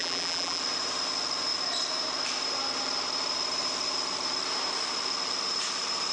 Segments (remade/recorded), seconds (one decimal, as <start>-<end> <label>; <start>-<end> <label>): 0.0-0.6 remade; 0.6-6.1 recorded